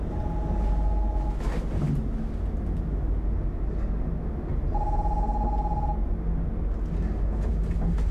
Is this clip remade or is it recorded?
recorded